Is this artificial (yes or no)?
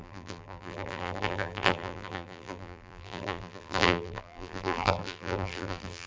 yes